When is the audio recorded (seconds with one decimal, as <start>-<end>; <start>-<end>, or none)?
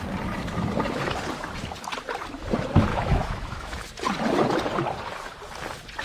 0.0-2.9; 3.9-6.0